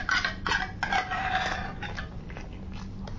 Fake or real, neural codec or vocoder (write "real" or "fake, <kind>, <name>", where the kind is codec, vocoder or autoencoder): real